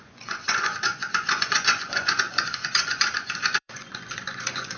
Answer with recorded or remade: remade